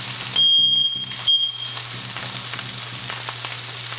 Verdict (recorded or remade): recorded